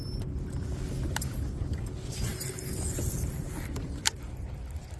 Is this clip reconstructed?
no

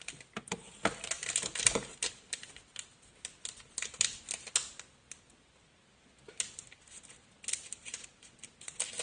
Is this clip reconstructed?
no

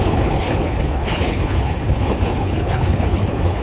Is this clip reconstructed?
yes